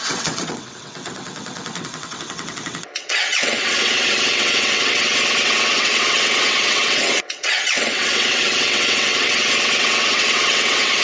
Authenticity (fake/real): fake